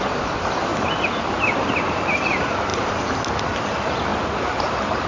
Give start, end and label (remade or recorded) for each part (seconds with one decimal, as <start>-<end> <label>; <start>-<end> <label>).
0.0-5.1 recorded